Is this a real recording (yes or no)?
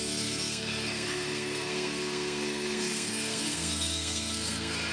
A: no